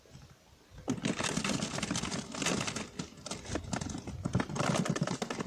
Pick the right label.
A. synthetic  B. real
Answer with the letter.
B